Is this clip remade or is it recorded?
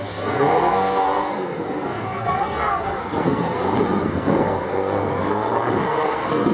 remade